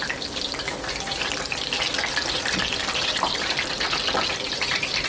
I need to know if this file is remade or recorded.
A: recorded